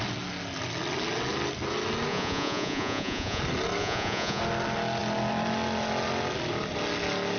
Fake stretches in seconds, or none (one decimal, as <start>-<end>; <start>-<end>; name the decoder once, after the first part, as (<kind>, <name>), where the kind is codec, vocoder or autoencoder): 2.1-3.4 (vocoder, Vocos); 3.8-4.4